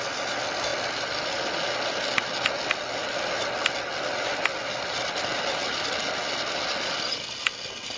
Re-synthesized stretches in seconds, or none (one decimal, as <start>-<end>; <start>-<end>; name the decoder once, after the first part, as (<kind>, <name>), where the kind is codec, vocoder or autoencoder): none